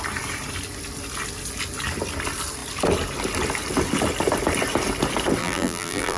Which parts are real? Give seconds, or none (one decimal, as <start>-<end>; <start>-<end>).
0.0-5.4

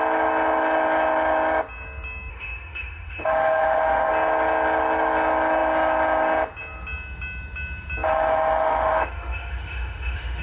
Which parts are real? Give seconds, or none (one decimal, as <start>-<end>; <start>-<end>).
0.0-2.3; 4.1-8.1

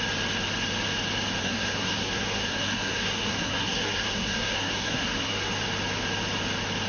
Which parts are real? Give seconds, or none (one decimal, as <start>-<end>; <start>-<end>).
0.0-1.4; 5.5-6.9

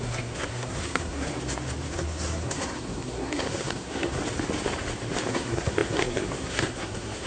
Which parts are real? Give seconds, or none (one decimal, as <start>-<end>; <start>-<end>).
1.3-1.9; 4.2-5.3

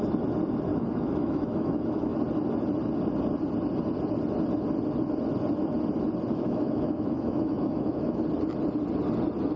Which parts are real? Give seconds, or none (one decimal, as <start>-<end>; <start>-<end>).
0.0-0.7; 2.2-6.3; 8.2-9.6

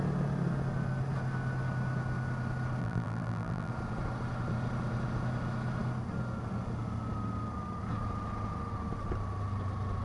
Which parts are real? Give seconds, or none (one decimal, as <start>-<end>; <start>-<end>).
0.0-2.8; 3.7-10.0